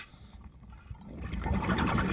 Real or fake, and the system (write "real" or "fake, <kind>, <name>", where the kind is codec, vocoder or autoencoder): real